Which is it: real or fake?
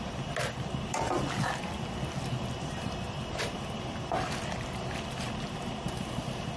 real